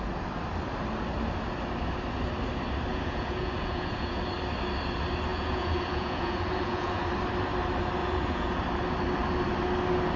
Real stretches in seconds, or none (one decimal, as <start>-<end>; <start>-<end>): 0.0-2.9; 4.2-5.3; 6.9-8.0; 8.6-10.2